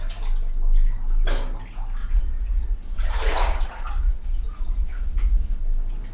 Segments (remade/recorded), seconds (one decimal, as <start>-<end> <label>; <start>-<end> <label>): 0.0-2.0 recorded; 2.0-5.6 remade; 5.6-6.1 recorded